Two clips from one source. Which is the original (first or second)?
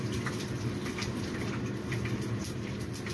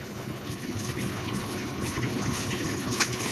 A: first